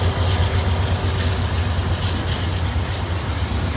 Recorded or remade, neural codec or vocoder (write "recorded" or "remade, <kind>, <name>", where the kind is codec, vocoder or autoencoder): recorded